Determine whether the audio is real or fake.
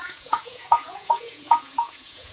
fake